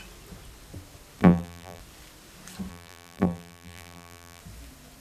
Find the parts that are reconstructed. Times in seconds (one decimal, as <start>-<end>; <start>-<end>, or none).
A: 1.2-1.8; 2.7-4.4